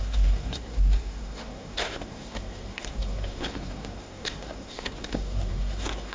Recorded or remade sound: remade